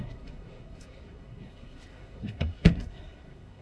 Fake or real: fake